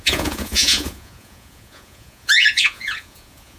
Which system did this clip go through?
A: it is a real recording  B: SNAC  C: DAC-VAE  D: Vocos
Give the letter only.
D